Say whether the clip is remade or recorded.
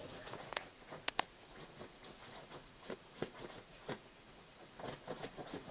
remade